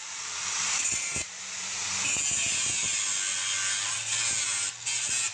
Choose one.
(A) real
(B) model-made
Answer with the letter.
A